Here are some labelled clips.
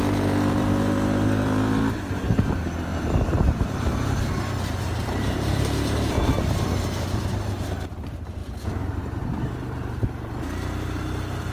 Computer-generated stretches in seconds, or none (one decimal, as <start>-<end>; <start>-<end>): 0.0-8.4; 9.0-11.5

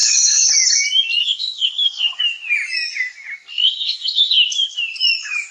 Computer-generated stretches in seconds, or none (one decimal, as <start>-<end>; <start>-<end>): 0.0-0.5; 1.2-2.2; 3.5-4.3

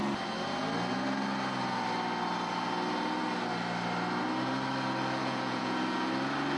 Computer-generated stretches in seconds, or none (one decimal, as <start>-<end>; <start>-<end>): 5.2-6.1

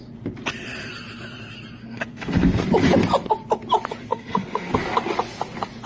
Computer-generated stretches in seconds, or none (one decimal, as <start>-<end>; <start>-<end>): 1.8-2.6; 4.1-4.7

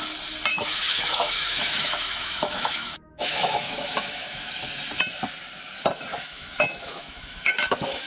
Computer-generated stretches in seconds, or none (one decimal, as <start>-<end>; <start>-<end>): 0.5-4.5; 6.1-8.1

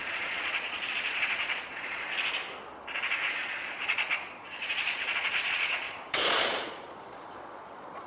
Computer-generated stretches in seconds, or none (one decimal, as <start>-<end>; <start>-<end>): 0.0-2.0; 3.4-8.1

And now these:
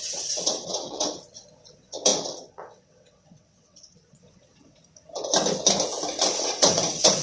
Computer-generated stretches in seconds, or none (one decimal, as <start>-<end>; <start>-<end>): 0.0-4.8; 6.3-7.2